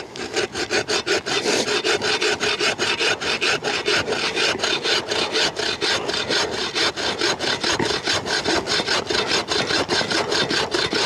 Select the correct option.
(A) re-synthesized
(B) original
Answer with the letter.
B